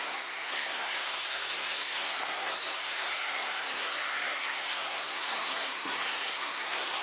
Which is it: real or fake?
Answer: fake